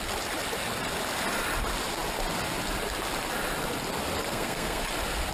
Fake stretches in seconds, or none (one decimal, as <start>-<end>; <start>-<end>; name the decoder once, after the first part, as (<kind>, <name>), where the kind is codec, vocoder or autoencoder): 4.3-4.8 (codec, SNAC)